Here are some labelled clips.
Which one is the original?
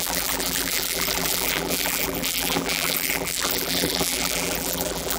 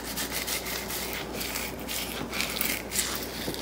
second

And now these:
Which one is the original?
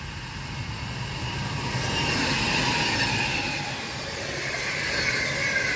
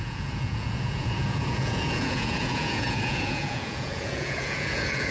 first